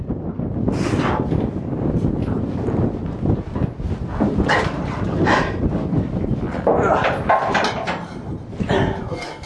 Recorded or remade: recorded